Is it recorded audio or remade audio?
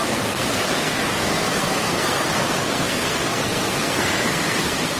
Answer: remade